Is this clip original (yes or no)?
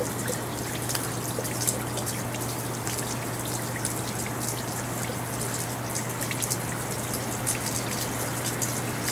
yes